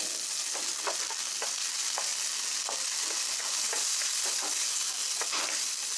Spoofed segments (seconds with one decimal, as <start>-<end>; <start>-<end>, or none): none